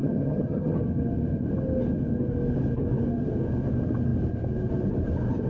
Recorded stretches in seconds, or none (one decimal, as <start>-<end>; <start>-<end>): 0.8-5.5